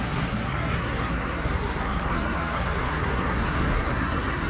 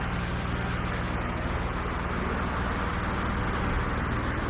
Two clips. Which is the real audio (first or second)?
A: second